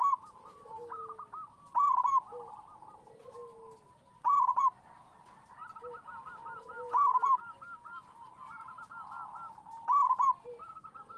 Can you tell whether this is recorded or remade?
recorded